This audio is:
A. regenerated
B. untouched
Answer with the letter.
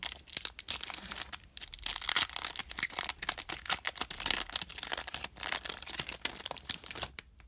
B